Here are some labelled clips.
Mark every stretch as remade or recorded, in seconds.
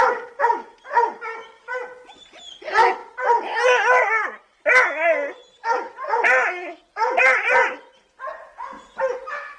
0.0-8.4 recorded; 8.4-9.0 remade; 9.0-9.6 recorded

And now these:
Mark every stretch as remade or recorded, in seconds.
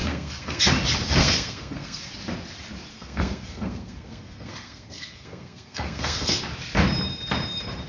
0.0-0.6 remade; 0.6-1.2 recorded; 1.2-2.0 remade; 2.0-2.9 recorded; 2.9-6.4 remade; 6.4-7.9 recorded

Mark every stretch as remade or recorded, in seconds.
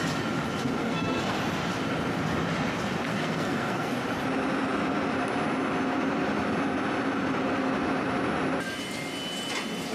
0.0-0.8 recorded; 0.8-1.4 remade; 1.4-3.1 recorded; 3.1-3.9 remade; 3.9-9.9 recorded